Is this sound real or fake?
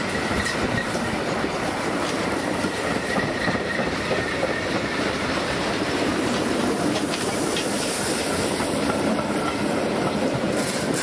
fake